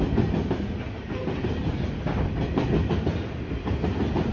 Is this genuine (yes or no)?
yes